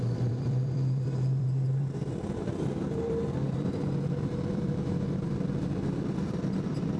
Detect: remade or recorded remade